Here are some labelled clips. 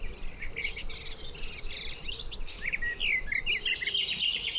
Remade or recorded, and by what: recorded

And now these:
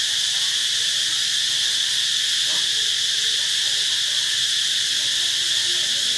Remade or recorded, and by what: recorded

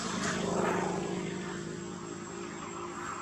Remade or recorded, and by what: recorded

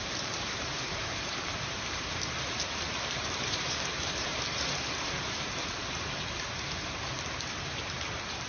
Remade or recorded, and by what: remade, vocoder, BigVGAN v2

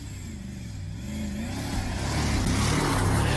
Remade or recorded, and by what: recorded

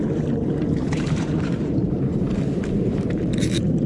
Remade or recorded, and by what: remade, vocoder, BigVGAN v2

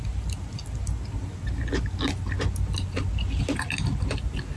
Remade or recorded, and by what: recorded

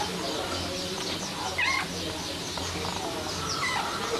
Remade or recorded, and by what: recorded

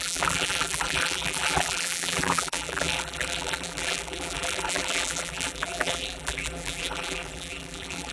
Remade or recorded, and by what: remade, vocoder, BigVGAN v2